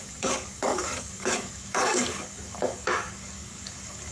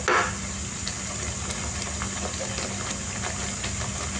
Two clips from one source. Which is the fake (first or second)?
first